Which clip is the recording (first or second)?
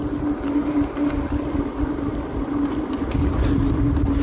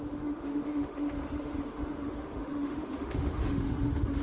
first